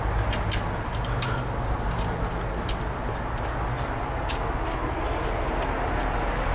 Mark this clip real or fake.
real